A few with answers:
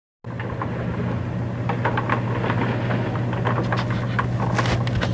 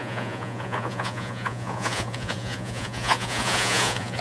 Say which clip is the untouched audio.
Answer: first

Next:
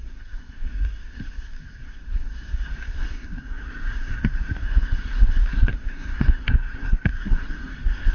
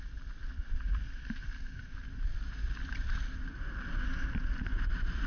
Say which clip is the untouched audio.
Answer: second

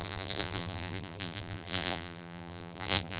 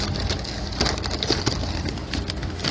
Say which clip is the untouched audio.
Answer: second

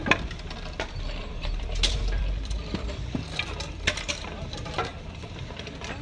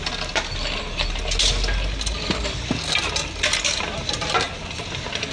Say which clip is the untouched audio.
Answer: second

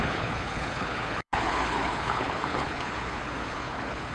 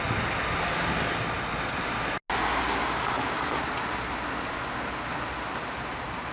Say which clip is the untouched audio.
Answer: second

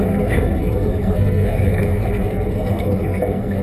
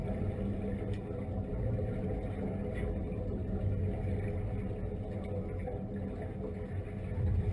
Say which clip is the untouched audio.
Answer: second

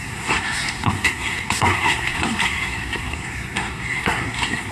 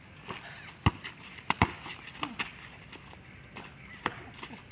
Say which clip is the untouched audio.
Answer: second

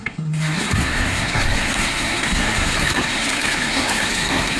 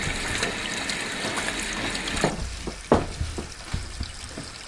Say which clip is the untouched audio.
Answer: second